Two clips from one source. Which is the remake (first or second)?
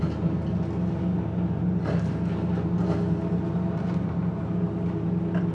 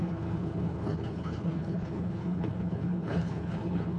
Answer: second